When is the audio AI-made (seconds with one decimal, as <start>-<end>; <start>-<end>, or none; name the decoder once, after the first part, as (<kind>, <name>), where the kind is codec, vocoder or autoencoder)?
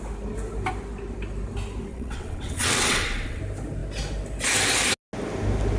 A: 1.9-3.4 (vocoder, WaveNeXt)